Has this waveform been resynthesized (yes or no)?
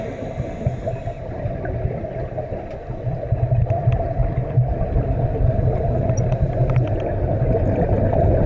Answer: no